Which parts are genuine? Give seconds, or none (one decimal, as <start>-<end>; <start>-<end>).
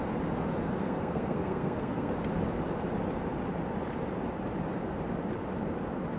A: 0.0-0.8; 2.1-6.2